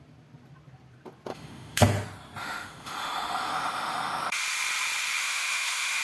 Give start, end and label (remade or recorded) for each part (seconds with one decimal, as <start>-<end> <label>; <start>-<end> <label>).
0.0-1.3 recorded; 1.3-1.8 remade; 1.8-2.4 recorded; 2.4-4.4 remade; 4.4-5.2 recorded; 5.2-6.0 remade